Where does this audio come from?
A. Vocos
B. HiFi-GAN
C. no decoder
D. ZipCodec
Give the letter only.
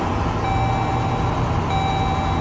C